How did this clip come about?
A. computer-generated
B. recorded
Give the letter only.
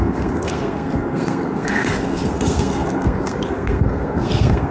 A